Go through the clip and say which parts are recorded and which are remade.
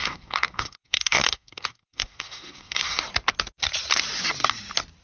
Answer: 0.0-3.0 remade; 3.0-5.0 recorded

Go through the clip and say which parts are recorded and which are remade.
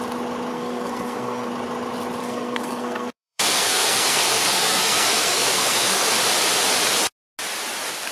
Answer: 0.0-0.5 recorded; 0.5-1.5 remade; 1.5-2.2 recorded; 2.2-6.1 remade; 6.1-8.1 recorded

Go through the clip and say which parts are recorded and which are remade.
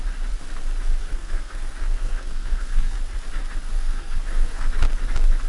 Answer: 0.0-1.0 recorded; 1.0-3.0 remade; 3.0-3.7 recorded; 3.7-4.7 remade; 4.7-5.5 recorded